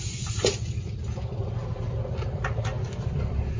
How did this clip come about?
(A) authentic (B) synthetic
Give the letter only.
B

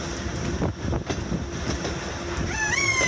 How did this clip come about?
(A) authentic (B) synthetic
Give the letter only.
A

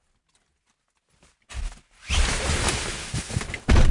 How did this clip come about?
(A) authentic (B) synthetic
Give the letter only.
A